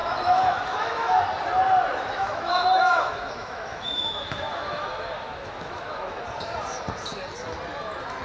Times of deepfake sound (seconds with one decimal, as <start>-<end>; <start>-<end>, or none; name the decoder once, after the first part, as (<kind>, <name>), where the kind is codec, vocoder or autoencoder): 0.0-1.2 (autoencoder, DAC-VAE); 1.9-6.2